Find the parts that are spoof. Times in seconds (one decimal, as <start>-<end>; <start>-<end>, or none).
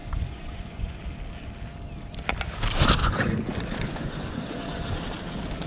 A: 0.0-1.0; 3.0-5.0